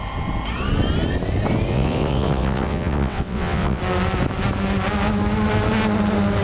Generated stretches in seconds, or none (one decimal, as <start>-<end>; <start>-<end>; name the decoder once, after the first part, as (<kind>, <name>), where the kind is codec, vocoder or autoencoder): 1.7-3.8 (vocoder, WaveNeXt)